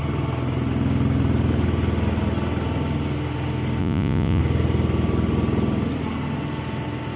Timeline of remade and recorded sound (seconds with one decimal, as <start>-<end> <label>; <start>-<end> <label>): 0.0-3.8 recorded; 3.8-4.4 remade; 4.4-7.2 recorded